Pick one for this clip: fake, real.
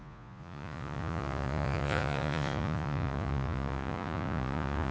fake